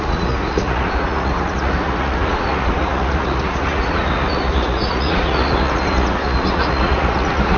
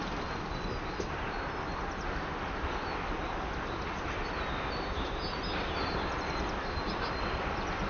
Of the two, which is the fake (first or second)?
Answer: first